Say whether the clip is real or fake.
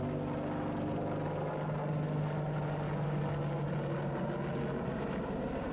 real